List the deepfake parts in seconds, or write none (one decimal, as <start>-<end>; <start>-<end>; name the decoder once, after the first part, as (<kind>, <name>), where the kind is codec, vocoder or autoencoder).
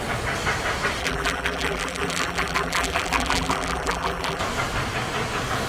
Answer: 1.0-4.4 (vocoder, BigVGAN v2)